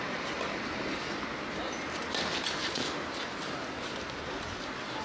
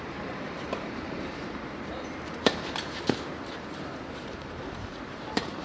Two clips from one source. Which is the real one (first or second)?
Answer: first